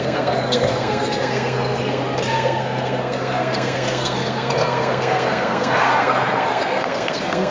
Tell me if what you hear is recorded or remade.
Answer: remade